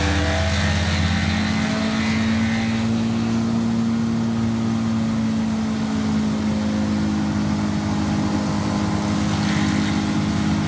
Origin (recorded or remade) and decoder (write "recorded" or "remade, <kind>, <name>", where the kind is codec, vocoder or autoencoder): recorded